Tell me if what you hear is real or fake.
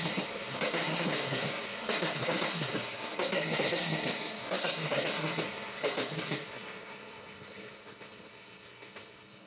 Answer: fake